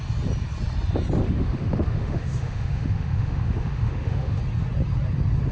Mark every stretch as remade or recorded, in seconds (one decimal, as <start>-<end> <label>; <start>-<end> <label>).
0.0-1.2 recorded; 1.2-4.4 remade; 4.4-5.5 recorded